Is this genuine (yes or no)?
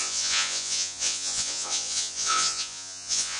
no